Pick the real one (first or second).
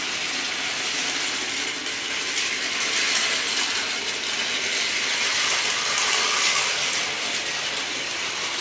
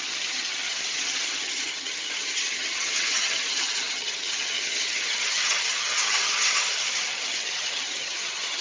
first